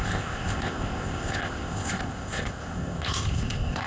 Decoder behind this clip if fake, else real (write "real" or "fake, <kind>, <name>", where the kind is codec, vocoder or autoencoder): fake, codec, ZipCodec